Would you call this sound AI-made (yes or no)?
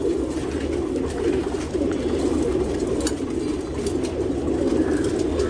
no